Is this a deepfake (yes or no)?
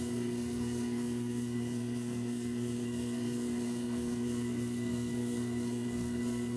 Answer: yes